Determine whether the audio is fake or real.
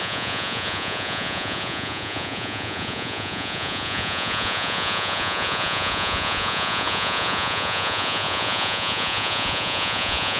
fake